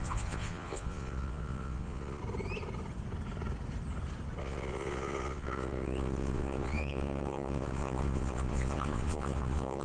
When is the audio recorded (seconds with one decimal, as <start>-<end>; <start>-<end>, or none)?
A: 2.2-4.4